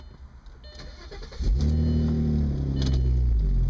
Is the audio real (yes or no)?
yes